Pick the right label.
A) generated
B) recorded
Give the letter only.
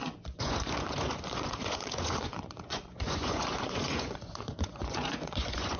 A